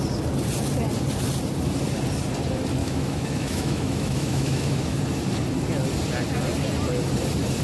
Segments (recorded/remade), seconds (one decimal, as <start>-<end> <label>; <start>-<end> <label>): 0.0-2.8 recorded; 2.8-5.0 remade; 5.0-7.6 recorded